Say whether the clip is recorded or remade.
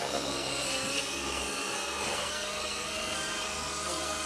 remade